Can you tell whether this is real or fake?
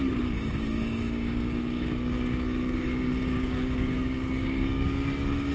fake